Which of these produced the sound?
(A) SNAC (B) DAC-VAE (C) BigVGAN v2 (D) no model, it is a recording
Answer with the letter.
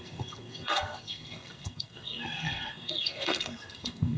A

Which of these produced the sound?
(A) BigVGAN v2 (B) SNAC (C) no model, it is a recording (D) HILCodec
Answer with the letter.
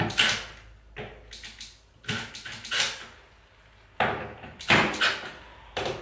C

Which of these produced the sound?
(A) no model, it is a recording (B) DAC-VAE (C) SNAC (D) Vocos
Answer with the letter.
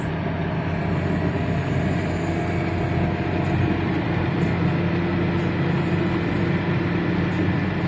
A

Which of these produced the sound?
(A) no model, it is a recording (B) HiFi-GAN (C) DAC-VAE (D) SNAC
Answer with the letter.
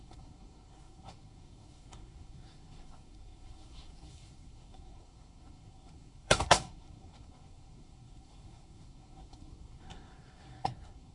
D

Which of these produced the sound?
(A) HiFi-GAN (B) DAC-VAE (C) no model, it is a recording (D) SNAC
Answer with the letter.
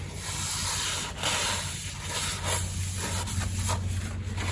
C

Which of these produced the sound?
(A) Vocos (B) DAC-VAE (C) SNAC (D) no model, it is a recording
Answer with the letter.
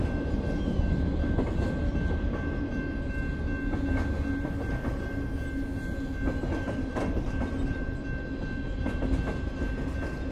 D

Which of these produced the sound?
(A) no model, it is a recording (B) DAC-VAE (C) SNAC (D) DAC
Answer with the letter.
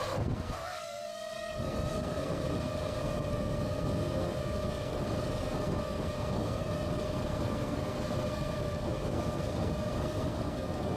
C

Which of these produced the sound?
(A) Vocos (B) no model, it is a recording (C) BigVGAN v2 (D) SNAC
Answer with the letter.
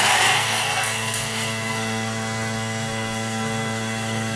D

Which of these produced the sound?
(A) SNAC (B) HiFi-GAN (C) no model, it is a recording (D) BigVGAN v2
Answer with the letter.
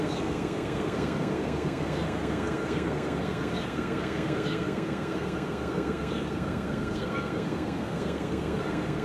A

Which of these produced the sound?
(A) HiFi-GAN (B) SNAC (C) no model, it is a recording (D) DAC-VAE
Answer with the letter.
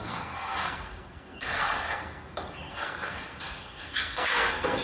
B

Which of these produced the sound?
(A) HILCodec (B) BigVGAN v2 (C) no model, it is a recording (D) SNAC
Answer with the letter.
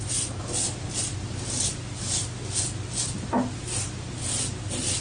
C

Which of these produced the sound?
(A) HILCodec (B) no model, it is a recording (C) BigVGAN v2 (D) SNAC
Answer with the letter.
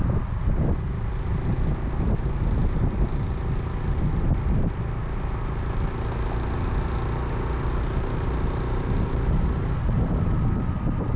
B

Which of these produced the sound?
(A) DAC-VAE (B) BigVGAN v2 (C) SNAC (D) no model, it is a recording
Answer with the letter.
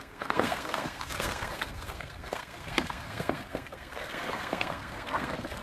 C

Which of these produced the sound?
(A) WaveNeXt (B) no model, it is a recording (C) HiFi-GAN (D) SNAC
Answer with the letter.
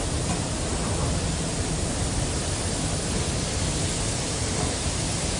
B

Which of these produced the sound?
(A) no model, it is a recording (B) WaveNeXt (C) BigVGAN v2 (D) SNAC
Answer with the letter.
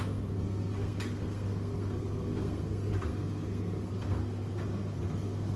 D